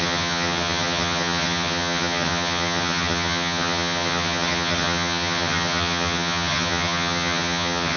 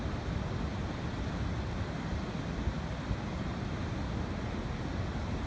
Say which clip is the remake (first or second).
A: first